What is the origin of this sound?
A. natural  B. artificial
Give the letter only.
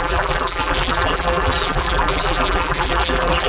B